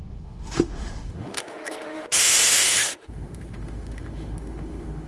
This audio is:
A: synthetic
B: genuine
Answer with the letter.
A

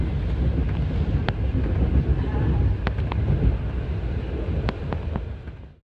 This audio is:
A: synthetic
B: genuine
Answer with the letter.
B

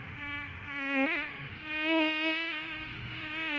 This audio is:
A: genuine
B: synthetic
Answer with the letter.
B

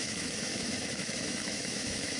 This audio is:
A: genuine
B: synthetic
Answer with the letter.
B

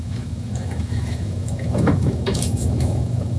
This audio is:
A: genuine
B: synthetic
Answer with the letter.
B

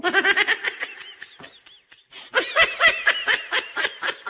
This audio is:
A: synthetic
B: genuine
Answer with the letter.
B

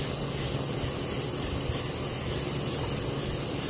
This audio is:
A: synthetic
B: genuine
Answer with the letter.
B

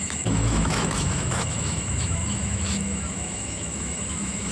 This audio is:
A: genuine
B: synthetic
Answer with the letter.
B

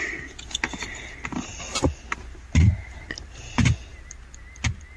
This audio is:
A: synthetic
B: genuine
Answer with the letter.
B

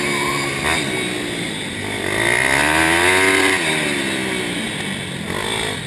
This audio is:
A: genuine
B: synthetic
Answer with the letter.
A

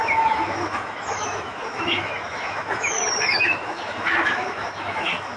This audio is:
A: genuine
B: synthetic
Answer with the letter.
B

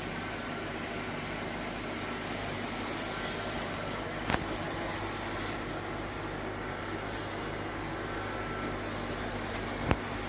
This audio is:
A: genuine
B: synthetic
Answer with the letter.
A